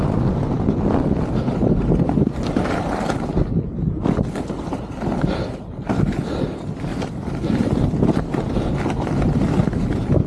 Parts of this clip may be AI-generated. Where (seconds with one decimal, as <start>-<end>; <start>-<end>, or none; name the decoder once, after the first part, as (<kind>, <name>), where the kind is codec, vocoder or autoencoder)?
none